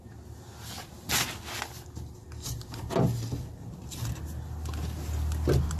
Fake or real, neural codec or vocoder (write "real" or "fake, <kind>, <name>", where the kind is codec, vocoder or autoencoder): real